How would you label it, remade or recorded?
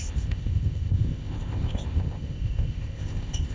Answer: remade